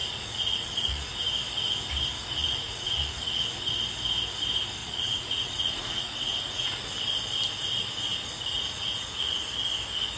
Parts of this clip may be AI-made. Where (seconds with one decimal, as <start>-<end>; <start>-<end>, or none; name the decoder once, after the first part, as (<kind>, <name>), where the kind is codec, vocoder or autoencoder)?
0.0-1.1 (vocoder, Vocos); 2.4-3.7; 4.8-6.9; 8.1-9.5